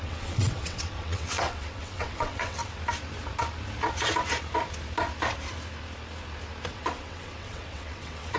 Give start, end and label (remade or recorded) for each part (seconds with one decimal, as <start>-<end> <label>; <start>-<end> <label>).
0.0-2.6 remade; 2.6-6.7 recorded; 6.7-8.4 remade